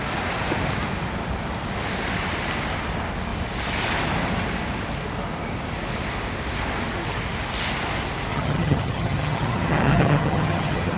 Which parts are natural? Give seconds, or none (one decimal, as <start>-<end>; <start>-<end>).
0.0-8.3